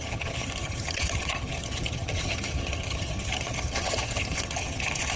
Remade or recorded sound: remade